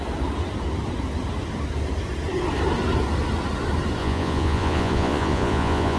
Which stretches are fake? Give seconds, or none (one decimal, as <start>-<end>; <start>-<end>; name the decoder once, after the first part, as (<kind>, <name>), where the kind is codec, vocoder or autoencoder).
4.0-6.0 (vocoder, Vocos)